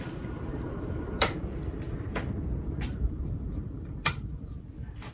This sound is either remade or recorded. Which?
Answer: remade